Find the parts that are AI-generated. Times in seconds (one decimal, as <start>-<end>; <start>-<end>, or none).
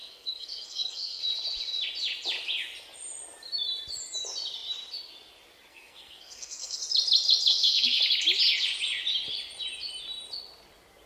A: 0.0-1.2; 5.7-6.8; 7.5-8.0